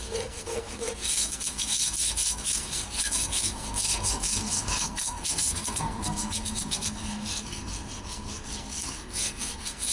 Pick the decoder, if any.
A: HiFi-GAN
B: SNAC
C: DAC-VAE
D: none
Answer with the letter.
B